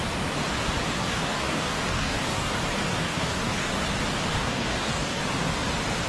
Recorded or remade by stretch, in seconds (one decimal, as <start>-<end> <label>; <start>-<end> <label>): 0.0-1.0 recorded; 1.0-2.5 remade; 2.5-2.9 recorded; 2.9-3.7 remade; 3.7-4.3 recorded; 4.3-5.2 remade; 5.2-6.1 recorded